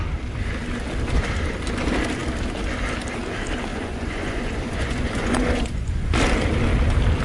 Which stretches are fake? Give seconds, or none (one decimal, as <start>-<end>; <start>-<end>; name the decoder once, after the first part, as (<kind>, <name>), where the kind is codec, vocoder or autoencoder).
3.7-6.1 (vocoder, Vocos)